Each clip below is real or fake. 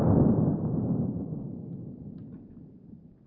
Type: real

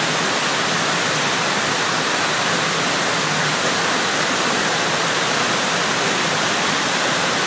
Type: real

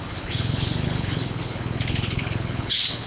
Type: fake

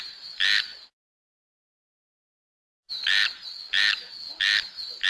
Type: real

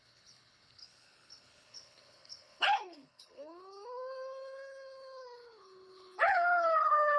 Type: fake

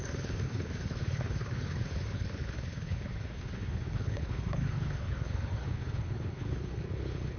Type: fake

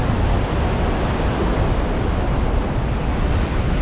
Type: real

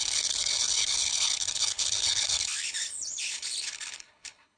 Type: fake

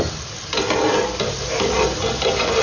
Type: real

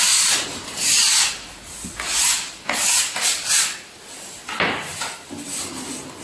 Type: real